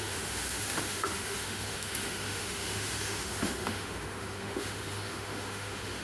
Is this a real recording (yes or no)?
no